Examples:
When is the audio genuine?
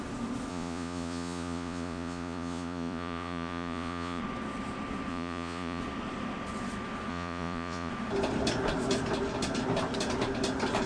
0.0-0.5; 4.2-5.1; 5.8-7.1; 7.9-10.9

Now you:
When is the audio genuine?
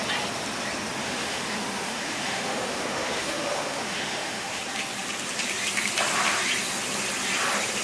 0.0-1.0; 4.6-7.8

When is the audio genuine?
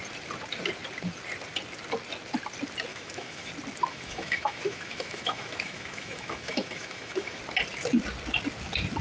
0.0-2.9; 3.5-3.9; 7.4-9.0